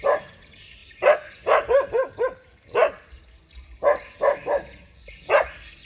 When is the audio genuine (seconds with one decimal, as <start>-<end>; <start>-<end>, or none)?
0.0-5.9